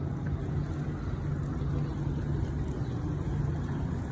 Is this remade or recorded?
recorded